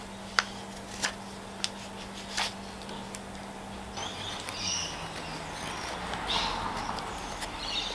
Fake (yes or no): no